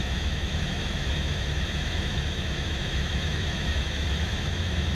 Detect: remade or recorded remade